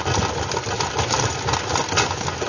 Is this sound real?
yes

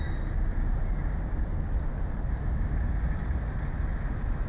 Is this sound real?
yes